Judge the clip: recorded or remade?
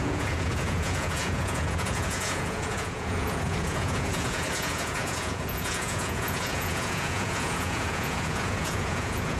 remade